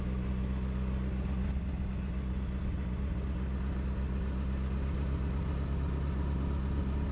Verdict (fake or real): real